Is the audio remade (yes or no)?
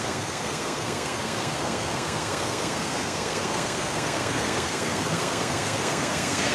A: yes